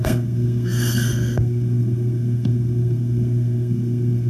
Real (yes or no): no